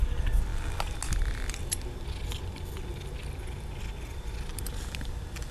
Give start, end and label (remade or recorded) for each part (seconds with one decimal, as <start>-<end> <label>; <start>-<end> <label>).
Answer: 0.0-5.5 recorded